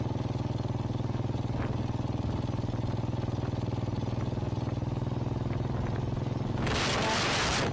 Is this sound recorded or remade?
recorded